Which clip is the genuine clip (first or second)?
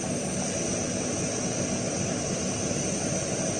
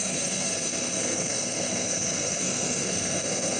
first